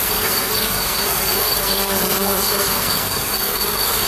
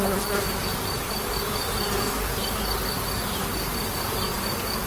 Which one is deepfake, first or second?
first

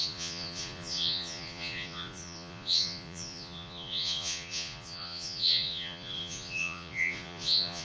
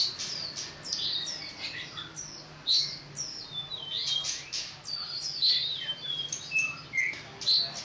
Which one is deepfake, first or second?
first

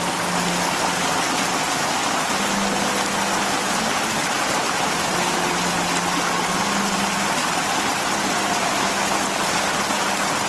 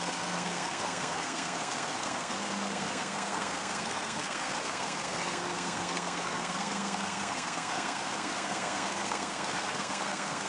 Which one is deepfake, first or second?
second